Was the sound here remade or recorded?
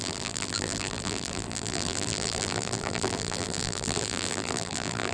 remade